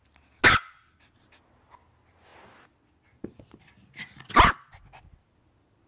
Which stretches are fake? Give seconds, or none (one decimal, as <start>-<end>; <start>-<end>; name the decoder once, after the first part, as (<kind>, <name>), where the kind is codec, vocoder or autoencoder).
none